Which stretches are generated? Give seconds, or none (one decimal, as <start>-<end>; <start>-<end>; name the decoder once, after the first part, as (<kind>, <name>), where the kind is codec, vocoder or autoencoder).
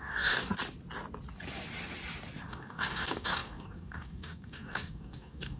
0.0-0.5 (codec, DAC); 2.5-5.6